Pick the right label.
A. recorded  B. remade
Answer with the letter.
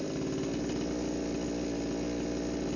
A